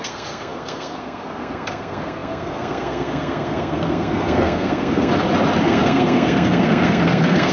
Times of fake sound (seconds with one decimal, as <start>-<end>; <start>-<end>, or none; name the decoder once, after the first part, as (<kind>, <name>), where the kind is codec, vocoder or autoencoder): 0.0-5.1 (codec, SNAC); 5.6-7.5